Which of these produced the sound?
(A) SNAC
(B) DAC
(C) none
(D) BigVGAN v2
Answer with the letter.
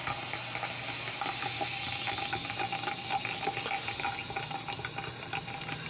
C